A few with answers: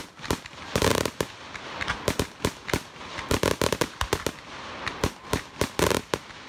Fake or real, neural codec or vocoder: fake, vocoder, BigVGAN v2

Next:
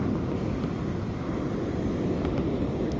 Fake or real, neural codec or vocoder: real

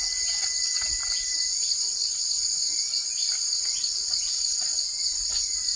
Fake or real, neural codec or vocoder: real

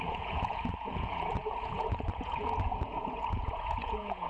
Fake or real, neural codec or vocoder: fake, vocoder, Vocos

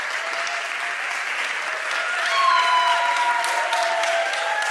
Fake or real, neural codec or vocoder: real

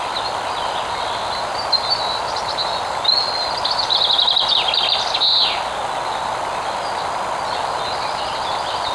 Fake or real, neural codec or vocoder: real